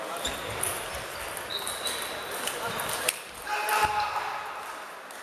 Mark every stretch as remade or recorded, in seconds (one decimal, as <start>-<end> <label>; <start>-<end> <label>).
0.0-5.2 recorded